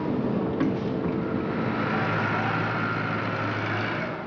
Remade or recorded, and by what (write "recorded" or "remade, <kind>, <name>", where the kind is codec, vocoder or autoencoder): recorded